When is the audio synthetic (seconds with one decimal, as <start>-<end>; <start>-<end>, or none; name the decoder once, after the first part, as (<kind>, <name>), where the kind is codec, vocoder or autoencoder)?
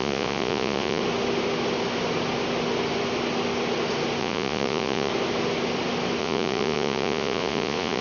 0.0-1.0 (vocoder, Vocos); 4.2-5.1; 6.2-8.0